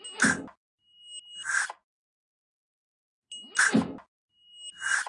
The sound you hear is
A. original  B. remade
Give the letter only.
A